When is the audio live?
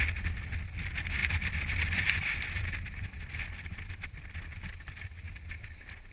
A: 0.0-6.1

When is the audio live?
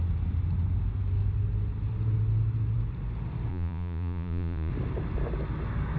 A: 0.0-3.5; 4.7-6.0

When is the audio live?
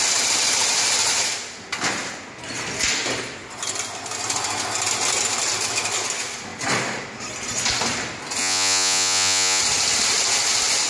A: 0.0-8.4; 9.6-10.9